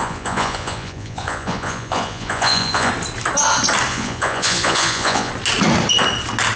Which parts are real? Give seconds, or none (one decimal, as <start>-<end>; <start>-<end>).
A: 2.9-3.9; 5.3-6.6